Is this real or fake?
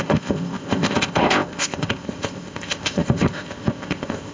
fake